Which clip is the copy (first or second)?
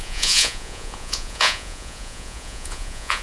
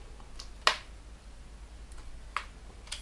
first